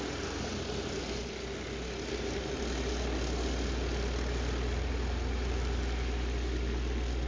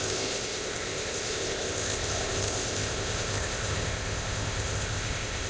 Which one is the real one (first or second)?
first